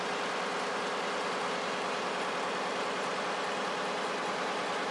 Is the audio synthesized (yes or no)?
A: no